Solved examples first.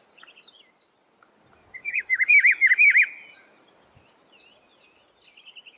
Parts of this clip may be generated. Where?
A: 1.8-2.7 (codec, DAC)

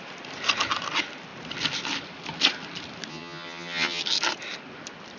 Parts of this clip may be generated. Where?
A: 3.1-4.0 (vocoder, HiFi-GAN)

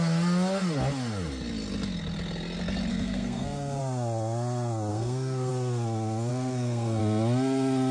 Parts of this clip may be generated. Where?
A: 2.9-3.8 (codec, SNAC); 4.9-5.5; 6.3-7.0

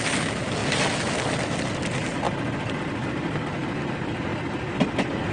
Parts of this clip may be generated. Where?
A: none

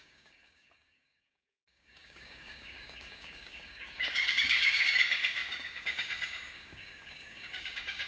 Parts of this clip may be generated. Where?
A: 0.0-8.1 (codec, DAC)

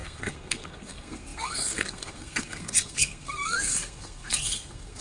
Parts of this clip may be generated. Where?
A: 0.0-5.0 (codec, SNAC)